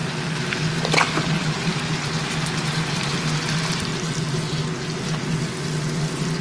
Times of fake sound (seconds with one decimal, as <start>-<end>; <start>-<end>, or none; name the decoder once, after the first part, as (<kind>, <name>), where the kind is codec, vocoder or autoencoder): 0.9-1.7 (vocoder, BigVGAN v2); 2.7-3.9; 5.0-6.4